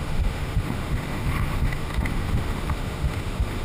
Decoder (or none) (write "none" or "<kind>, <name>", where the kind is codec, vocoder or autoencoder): autoencoder, DAC-VAE